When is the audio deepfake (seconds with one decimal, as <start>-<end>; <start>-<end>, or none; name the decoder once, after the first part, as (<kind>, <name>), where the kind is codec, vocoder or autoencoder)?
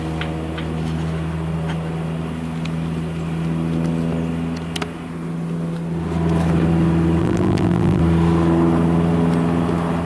7.2-8.0 (vocoder, BigVGAN v2)